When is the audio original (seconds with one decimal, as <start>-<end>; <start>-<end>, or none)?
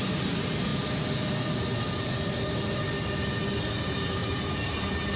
0.7-3.8